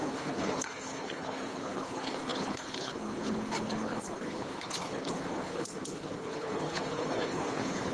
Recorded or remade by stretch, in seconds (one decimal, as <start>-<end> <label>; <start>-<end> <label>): 0.0-7.9 remade